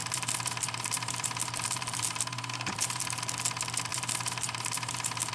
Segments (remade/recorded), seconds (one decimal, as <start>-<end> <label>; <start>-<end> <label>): 0.0-3.2 remade; 3.2-3.9 recorded; 3.9-5.3 remade